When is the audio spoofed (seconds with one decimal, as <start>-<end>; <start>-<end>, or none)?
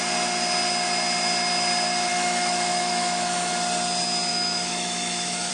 2.1-3.5; 4.3-5.5